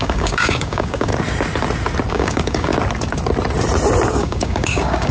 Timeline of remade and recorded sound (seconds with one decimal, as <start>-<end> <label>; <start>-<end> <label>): 0.0-1.1 remade; 1.1-2.1 recorded; 2.1-2.7 remade; 2.7-4.2 recorded; 4.2-5.1 remade